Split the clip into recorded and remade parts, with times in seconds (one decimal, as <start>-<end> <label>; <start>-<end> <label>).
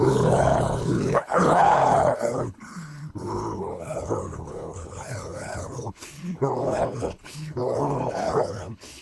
0.0-9.0 remade